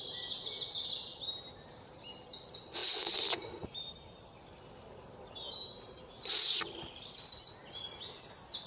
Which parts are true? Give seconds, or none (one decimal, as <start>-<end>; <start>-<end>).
0.0-8.7